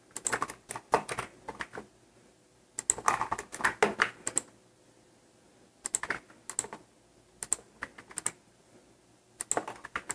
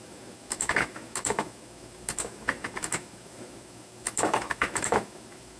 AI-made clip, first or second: second